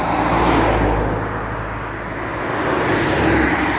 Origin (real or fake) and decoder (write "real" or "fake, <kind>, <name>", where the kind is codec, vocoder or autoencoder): real